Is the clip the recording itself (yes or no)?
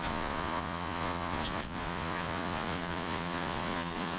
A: no